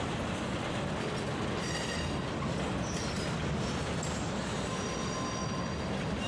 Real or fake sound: real